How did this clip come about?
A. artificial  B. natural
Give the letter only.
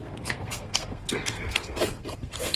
A